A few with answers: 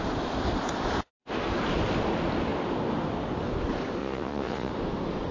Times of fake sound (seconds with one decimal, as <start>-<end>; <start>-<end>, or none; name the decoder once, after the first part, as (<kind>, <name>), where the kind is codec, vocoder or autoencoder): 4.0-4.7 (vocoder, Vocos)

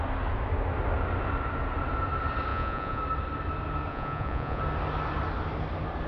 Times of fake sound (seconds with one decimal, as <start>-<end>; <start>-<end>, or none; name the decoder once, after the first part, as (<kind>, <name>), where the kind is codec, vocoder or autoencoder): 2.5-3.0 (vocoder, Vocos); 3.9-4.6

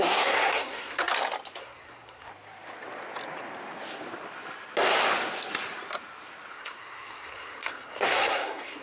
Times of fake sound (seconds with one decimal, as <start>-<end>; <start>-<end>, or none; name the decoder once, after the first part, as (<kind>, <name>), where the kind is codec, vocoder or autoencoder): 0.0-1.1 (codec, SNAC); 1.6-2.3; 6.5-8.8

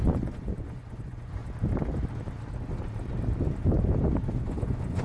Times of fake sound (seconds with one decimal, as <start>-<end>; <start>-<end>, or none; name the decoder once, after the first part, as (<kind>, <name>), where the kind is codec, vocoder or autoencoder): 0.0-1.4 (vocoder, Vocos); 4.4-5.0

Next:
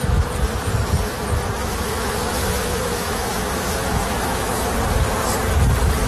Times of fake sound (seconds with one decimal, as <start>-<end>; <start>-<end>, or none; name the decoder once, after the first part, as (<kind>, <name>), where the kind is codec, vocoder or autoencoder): 1.6-4.5 (autoencoder, DAC-VAE)

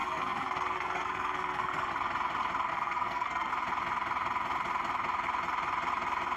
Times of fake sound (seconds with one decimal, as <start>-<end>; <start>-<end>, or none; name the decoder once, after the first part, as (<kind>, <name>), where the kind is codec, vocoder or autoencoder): 0.0-1.9 (codec, SNAC); 2.7-3.5

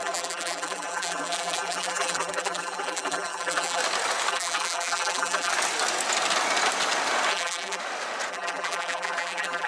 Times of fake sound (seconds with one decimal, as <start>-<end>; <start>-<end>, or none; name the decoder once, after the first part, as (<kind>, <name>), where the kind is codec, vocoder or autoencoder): 0.0-3.8 (vocoder, BigVGAN v2); 4.3-5.5; 7.3-7.8; 8.3-9.7